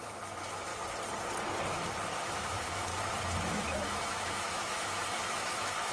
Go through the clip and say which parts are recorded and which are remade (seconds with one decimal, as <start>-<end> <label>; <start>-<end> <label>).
0.0-0.7 remade; 0.7-2.2 recorded; 2.2-2.9 remade; 2.9-3.5 recorded; 3.5-5.9 remade